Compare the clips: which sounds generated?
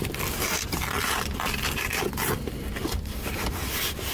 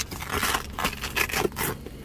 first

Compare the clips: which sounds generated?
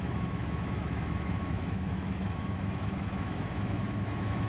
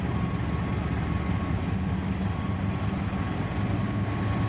first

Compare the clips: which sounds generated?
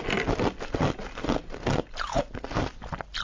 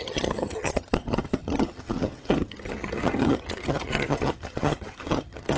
second